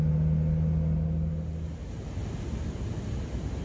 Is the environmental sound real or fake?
real